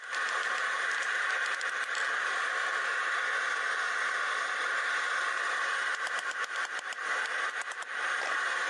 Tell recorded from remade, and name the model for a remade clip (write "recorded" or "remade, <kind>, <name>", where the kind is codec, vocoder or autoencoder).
recorded